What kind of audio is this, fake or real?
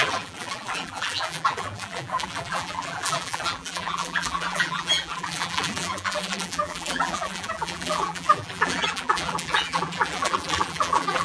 fake